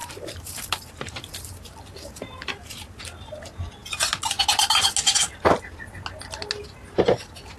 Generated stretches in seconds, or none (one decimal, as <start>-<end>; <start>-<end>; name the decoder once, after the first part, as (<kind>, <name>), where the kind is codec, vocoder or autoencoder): 0.0-3.0 (vocoder, BigVGAN v2)